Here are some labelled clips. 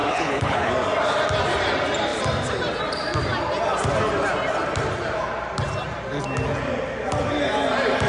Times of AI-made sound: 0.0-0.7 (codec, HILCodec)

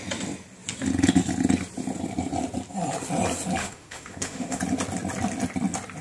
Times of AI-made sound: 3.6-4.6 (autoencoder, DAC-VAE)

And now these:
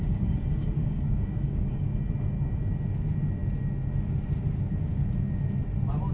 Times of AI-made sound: 0.0-1.8 (codec, DAC)

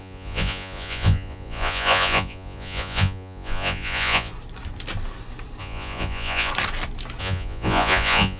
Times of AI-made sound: 0.0-4.3 (vocoder, Vocos); 5.6-6.5; 7.2-8.4

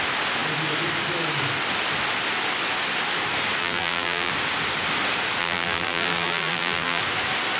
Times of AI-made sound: 3.6-4.3 (vocoder, BigVGAN v2); 5.4-7.0